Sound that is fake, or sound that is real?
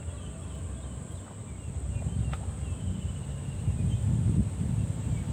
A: real